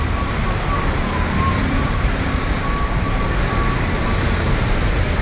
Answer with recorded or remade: remade